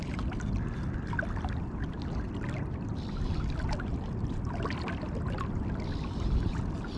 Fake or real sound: real